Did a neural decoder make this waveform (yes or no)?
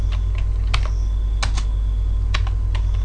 no